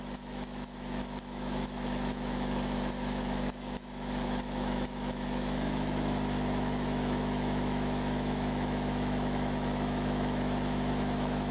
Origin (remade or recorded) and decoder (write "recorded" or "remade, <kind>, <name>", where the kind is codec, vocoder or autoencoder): remade, autoencoder, DAC-VAE